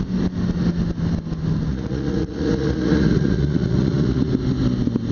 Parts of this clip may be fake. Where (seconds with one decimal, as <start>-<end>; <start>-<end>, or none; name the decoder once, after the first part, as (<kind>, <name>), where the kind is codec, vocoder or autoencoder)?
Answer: 1.7-4.3 (vocoder, Vocos)